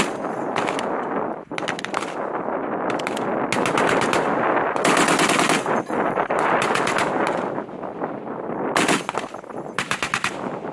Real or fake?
real